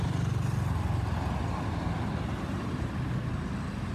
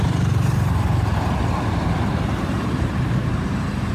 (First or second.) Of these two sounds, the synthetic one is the second